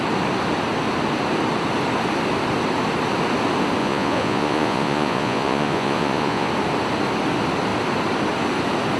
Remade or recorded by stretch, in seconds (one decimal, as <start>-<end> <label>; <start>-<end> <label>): 0.0-3.8 recorded; 3.8-6.5 remade; 6.5-9.0 recorded